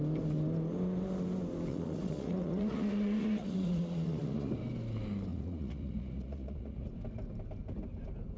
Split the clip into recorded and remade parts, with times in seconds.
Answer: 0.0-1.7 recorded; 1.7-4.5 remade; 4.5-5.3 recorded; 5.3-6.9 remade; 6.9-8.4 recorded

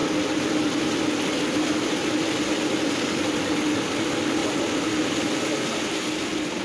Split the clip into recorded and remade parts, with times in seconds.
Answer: 0.0-6.6 recorded

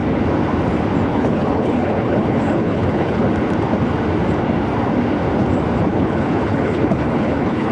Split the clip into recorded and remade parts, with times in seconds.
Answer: 0.0-1.1 recorded; 1.1-3.2 remade; 3.2-5.9 recorded; 5.9-7.7 remade

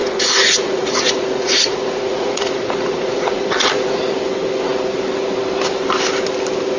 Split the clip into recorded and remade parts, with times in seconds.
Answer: 0.0-4.1 remade; 4.1-6.8 recorded

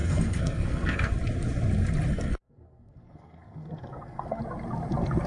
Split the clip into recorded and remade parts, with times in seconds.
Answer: 0.0-1.1 remade; 1.1-2.1 recorded; 2.1-4.4 remade; 4.4-5.3 recorded